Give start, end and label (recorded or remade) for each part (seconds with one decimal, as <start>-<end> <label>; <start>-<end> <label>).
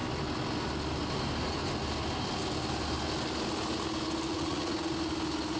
0.0-4.3 recorded; 4.3-4.9 remade; 4.9-5.6 recorded